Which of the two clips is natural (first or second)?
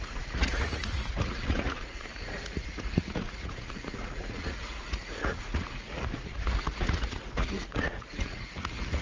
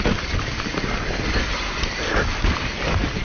second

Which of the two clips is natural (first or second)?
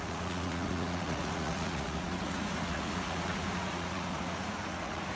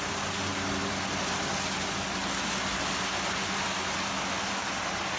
second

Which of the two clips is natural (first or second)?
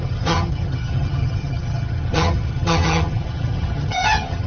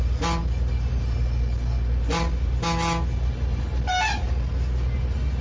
second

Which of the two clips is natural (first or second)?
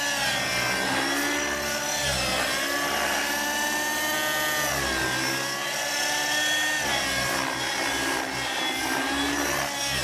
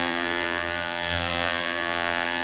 first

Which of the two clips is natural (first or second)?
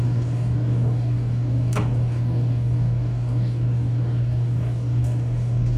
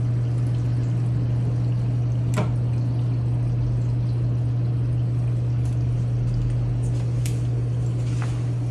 second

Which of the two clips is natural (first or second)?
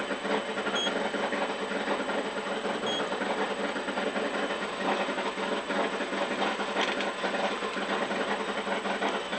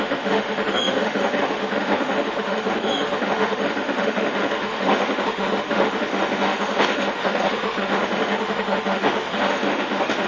first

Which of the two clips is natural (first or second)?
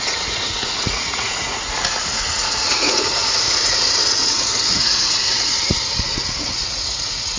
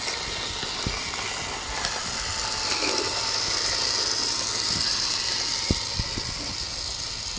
second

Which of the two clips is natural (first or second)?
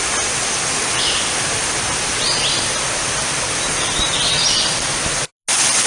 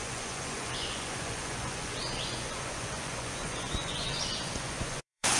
first